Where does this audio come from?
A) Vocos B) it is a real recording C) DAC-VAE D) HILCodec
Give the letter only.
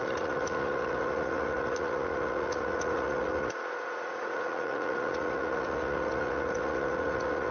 A